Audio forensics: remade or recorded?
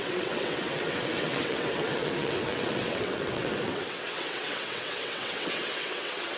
remade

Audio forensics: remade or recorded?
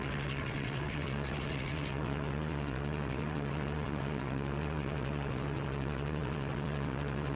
remade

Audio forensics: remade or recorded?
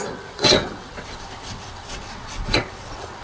remade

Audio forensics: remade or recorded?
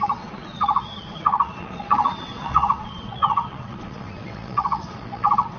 remade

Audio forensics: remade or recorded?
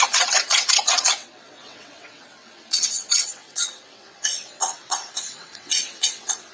remade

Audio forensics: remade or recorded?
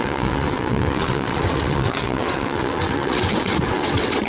remade